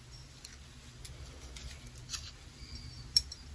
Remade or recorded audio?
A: recorded